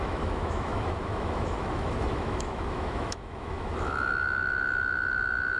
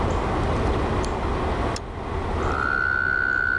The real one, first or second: second